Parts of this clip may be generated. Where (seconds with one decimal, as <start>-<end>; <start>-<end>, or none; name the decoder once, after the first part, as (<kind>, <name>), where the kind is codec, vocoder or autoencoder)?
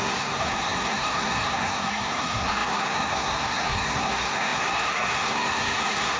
0.0-6.2 (codec, SNAC)